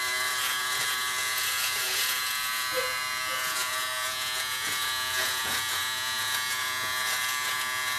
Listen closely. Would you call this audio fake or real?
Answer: fake